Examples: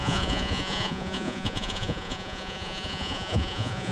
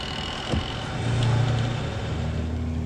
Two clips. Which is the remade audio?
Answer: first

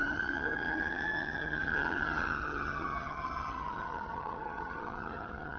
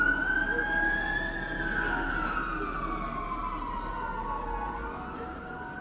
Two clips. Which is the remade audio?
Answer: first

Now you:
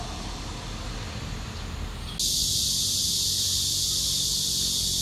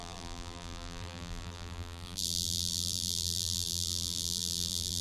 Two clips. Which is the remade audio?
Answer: second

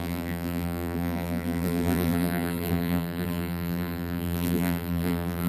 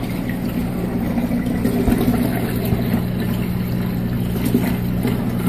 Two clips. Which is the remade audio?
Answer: first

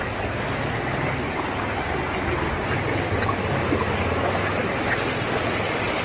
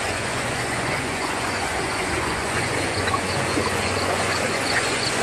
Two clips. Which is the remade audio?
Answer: second